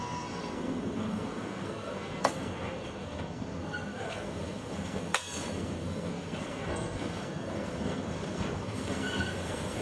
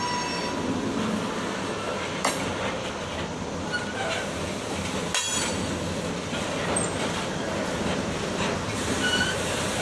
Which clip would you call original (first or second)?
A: second